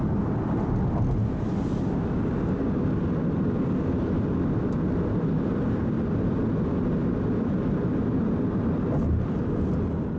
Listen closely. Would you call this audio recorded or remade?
recorded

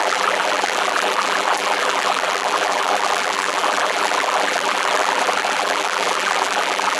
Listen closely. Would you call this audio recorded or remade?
remade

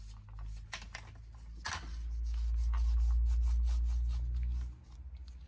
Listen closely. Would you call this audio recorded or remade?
recorded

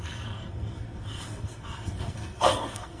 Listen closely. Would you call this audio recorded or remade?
remade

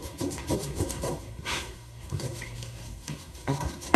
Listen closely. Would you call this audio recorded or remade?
remade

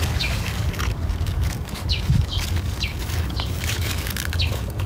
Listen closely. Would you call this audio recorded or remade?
remade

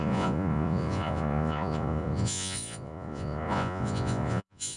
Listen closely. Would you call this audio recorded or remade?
remade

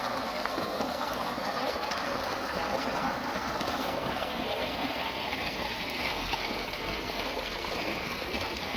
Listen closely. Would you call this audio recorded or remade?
remade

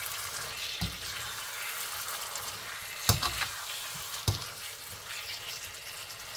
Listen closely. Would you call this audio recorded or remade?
recorded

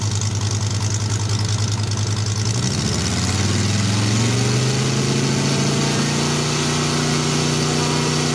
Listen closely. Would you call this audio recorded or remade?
recorded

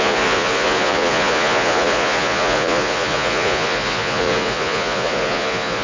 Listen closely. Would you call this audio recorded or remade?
remade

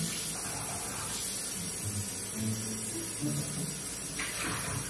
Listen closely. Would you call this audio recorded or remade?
recorded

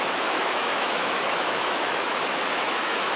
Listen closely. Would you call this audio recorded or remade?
remade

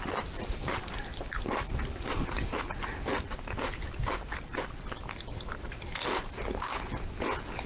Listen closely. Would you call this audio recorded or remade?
recorded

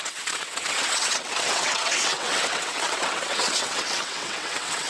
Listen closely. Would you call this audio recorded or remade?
remade